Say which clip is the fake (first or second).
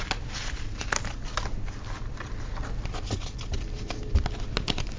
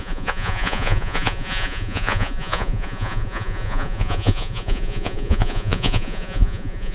second